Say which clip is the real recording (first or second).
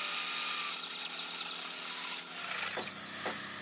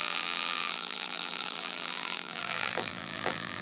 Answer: first